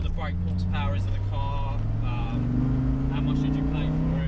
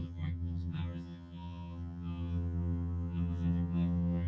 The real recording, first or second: first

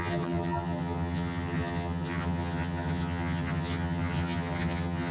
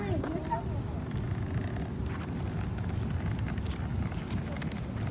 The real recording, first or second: second